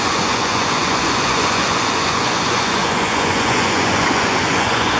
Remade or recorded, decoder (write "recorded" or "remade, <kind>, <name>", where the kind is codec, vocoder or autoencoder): remade, vocoder, Vocos